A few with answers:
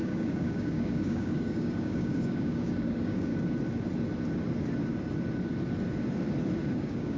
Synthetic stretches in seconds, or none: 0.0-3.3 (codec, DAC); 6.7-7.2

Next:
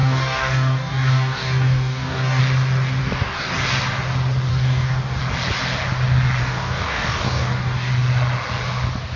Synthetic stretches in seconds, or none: 0.0-2.4 (codec, DAC); 3.0-3.5; 4.5-5.2; 6.4-7.9